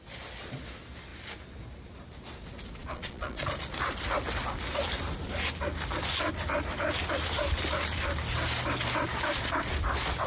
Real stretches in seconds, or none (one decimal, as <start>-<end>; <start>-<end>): 0.0-2.8; 3.4-10.3